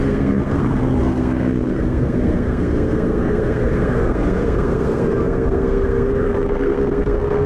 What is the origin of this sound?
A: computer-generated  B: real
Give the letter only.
A